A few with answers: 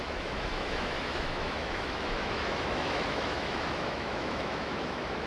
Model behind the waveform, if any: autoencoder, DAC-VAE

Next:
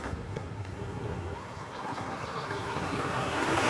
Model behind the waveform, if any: codec, SNAC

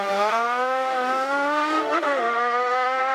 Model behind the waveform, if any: autoencoder, DAC-VAE